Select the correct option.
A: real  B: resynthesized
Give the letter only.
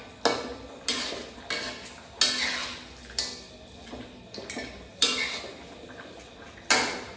A